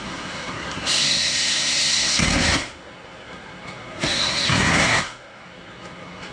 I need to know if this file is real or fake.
fake